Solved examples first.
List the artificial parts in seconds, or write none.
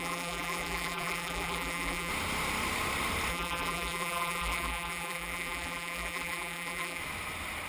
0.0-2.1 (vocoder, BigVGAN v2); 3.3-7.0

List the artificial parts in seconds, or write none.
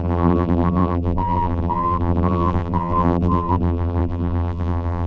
0.0-5.1 (vocoder, BigVGAN v2)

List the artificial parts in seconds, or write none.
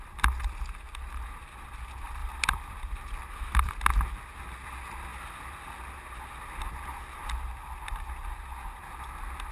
2.2-3.7 (vocoder, BigVGAN v2); 5.1-5.6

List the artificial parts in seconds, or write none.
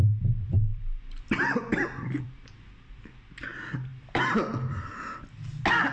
0.7-2.5 (vocoder, BigVGAN v2); 3.9-4.7